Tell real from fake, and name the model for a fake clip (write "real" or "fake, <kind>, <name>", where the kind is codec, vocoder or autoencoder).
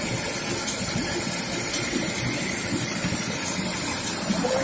fake, vocoder, BigVGAN v2